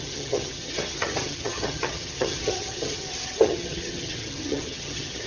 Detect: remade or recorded remade